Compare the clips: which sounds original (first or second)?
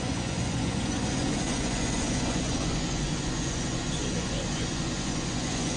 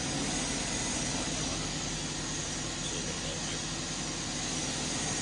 second